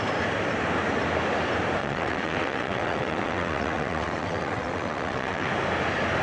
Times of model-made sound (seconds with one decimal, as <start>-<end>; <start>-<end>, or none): 1.8-5.5